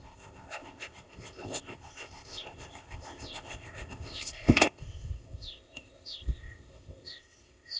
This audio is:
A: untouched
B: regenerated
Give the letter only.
B